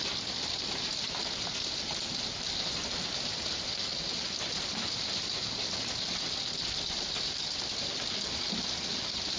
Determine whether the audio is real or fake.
real